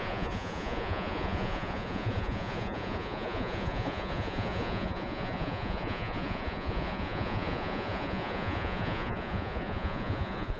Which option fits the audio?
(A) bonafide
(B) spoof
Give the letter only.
B